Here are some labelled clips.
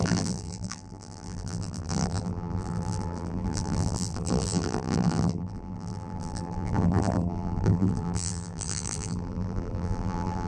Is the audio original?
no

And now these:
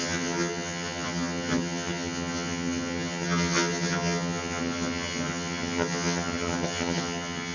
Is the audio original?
no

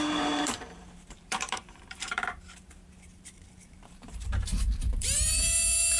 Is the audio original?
no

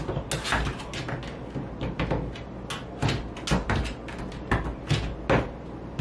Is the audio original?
yes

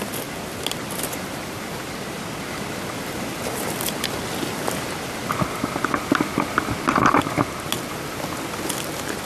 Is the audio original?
yes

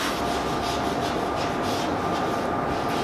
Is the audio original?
yes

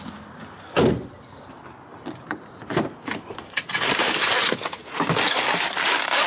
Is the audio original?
yes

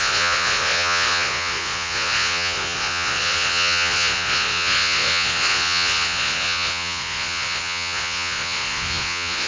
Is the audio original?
no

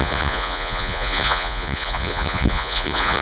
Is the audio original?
no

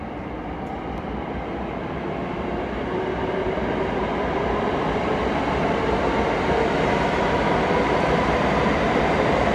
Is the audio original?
yes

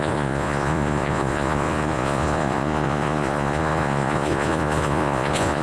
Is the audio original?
no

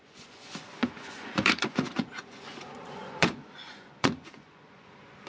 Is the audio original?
no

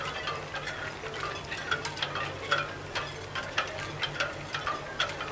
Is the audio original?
yes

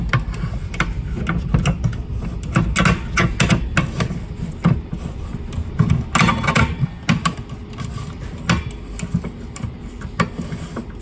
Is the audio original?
yes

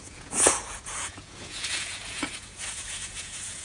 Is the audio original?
no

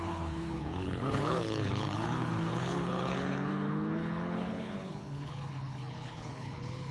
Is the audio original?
no